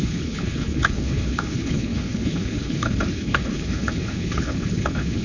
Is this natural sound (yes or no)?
no